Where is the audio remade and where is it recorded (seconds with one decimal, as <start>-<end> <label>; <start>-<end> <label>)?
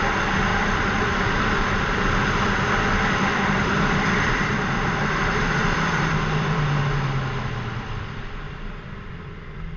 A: 0.0-0.5 recorded; 0.5-2.2 remade; 2.2-2.9 recorded; 2.9-6.7 remade; 6.7-9.8 recorded